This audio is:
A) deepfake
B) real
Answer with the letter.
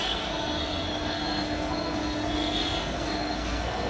A